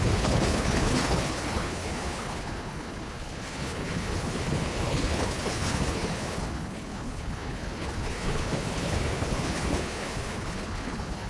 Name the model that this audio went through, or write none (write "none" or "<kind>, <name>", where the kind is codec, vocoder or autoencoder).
codec, HILCodec